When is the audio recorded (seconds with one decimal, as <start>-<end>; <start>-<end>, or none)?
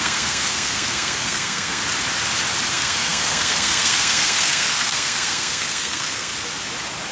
1.8-2.7; 6.3-7.1